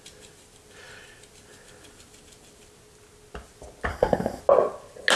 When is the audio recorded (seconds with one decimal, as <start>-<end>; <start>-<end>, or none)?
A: 0.0-3.9; 4.4-5.2